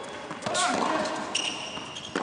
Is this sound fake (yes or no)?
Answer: no